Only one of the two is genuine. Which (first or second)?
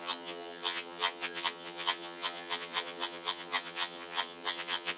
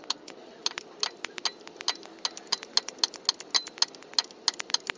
second